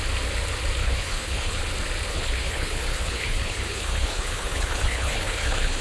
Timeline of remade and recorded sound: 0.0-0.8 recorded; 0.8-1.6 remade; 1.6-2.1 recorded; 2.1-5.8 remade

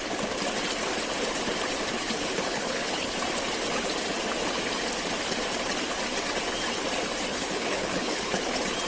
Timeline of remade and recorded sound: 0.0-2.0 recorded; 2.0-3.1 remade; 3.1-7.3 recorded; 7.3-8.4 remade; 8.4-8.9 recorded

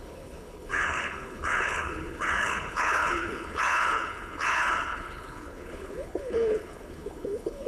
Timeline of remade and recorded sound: 0.0-7.7 remade

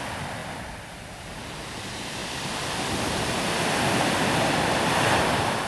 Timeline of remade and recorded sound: 0.0-5.7 recorded